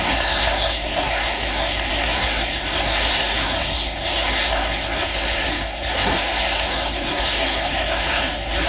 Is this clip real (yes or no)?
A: no